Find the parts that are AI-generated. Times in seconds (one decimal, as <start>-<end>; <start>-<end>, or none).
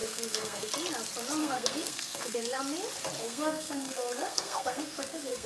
0.0-0.7; 1.4-2.6; 3.2-5.5